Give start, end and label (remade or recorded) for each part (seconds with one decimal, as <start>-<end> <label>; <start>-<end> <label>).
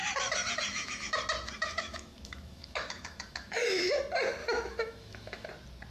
0.0-0.7 recorded; 0.7-1.2 remade; 1.2-1.6 recorded; 1.6-4.0 remade; 4.0-4.4 recorded; 4.4-5.5 remade; 5.5-5.9 recorded